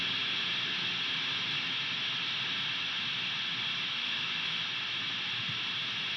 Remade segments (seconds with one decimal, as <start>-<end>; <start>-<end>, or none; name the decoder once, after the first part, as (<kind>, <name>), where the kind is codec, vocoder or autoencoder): 3.9-4.6 (autoencoder, DAC-VAE)